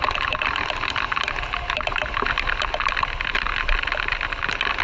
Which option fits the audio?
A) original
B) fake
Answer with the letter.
A